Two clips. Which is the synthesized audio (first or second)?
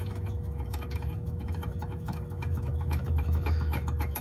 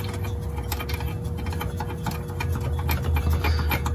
first